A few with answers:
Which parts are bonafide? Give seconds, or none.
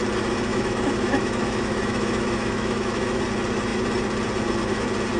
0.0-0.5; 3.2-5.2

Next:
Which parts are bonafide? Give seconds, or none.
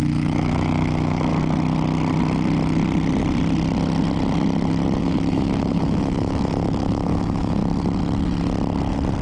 1.3-5.0; 7.6-9.2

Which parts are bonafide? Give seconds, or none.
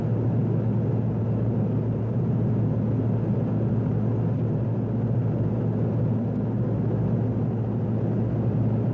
0.0-8.9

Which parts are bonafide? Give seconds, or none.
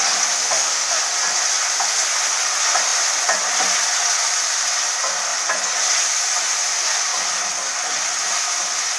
0.0-0.4; 1.0-9.0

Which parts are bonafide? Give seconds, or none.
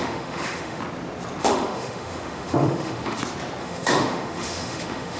0.8-1.4; 3.2-3.6